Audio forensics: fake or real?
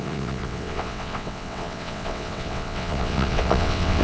fake